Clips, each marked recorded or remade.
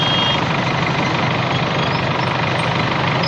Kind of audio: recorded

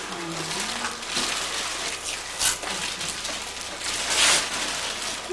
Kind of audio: recorded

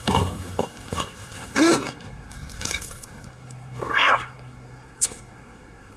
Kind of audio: remade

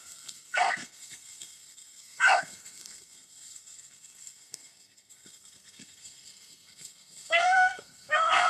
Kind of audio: remade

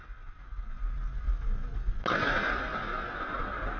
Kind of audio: recorded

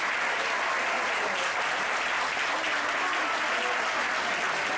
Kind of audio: recorded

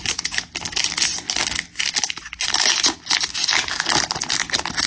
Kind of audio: recorded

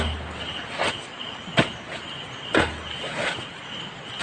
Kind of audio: recorded